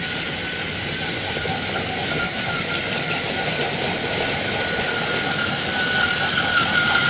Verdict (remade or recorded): recorded